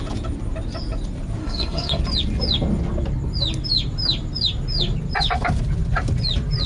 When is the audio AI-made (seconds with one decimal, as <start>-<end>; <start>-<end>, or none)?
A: 1.4-2.0